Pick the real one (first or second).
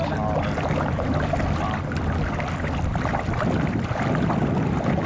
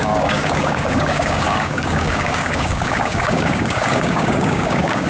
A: first